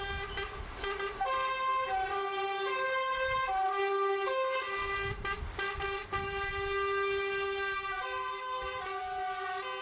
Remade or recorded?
recorded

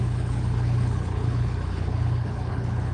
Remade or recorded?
remade